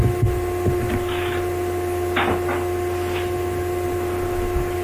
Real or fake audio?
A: real